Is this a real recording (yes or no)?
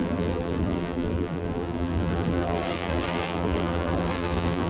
no